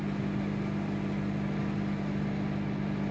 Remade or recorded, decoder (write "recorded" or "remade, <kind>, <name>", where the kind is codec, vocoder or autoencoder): recorded